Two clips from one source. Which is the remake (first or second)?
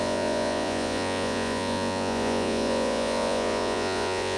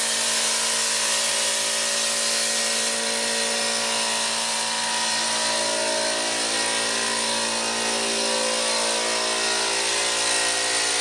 first